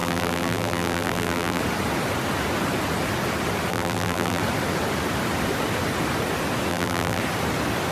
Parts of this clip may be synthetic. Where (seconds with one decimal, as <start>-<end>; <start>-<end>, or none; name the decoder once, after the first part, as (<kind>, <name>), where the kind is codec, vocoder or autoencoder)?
0.0-1.6 (vocoder, BigVGAN v2); 3.7-4.4; 6.7-7.2